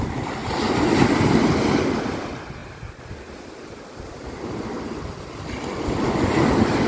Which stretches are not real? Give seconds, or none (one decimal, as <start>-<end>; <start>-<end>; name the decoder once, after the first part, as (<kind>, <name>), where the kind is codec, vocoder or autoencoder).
none